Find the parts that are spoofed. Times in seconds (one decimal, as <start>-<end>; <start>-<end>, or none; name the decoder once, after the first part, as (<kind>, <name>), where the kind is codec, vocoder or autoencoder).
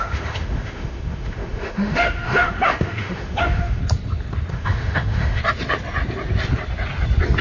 0.0-3.8 (autoencoder, DAC-VAE); 4.5-5.4